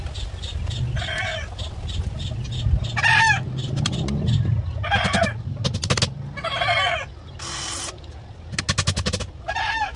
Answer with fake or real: real